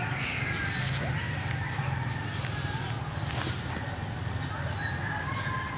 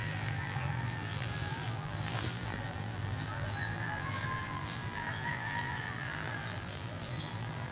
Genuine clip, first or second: first